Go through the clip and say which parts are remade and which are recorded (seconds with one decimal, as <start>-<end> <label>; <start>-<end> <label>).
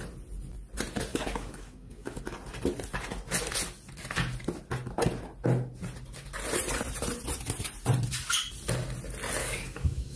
0.0-1.1 recorded; 1.1-2.2 remade; 2.2-9.4 recorded; 9.4-10.2 remade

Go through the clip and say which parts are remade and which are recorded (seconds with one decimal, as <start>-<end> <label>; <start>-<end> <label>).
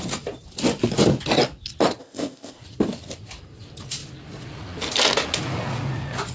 0.0-2.0 recorded; 2.0-2.6 remade; 2.6-6.3 recorded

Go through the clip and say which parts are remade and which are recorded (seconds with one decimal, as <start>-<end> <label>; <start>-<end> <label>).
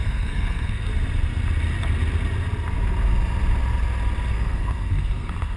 0.0-0.9 remade; 0.9-4.3 recorded; 4.3-5.6 remade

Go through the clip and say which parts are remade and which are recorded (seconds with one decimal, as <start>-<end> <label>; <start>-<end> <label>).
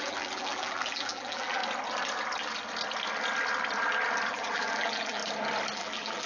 0.0-1.6 remade; 1.6-4.3 recorded; 4.3-5.2 remade; 5.2-5.7 recorded; 5.7-6.3 remade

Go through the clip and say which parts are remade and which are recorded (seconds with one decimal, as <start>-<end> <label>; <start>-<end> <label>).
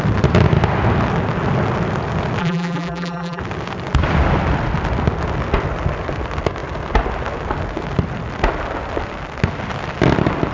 0.0-2.4 recorded; 2.4-3.4 remade; 3.4-10.5 recorded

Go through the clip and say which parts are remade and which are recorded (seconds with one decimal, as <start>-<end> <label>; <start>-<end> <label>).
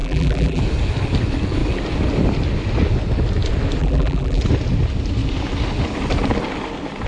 0.0-0.6 remade; 0.6-3.8 recorded; 3.8-4.4 remade; 4.4-7.1 recorded